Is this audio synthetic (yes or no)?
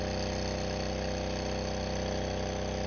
no